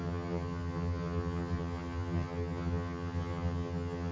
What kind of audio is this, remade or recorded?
remade